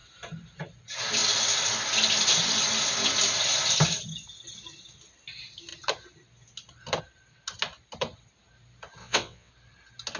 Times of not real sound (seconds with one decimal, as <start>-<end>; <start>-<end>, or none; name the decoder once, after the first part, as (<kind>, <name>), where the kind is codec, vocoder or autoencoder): 9.0-9.5 (vocoder, WaveNeXt)